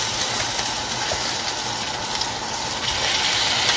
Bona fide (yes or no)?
yes